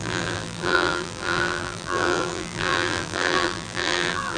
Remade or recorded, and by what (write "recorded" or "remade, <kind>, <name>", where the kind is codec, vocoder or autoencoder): remade, vocoder, BigVGAN v2